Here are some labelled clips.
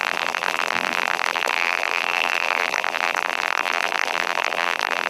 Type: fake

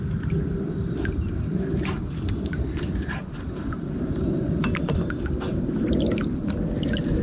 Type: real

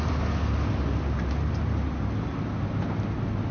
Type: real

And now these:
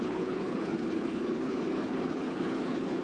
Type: fake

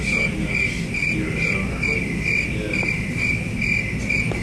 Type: real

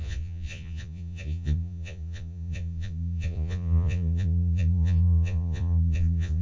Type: fake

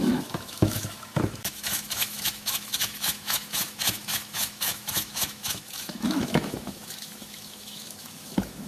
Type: fake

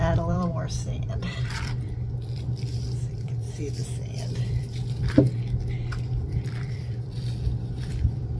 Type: fake